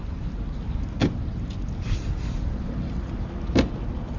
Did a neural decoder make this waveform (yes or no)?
no